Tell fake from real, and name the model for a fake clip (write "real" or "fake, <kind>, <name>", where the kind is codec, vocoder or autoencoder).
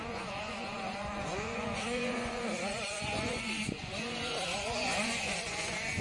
fake, vocoder, Vocos